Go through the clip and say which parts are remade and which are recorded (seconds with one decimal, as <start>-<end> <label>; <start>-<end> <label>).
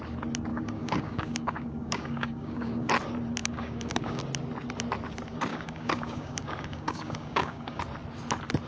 0.0-0.5 recorded; 0.5-2.9 remade; 2.9-3.4 recorded; 3.4-4.2 remade; 4.2-5.5 recorded; 5.5-7.8 remade; 7.8-8.7 recorded